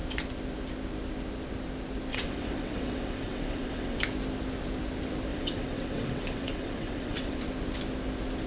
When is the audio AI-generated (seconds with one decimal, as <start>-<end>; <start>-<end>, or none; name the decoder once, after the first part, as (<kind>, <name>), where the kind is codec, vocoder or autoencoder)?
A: 2.1-4.0 (vocoder, WaveNeXt); 5.3-7.4